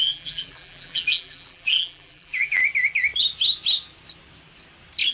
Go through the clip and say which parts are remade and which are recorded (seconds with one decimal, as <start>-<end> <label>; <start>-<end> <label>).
0.0-2.6 remade; 2.6-5.1 recorded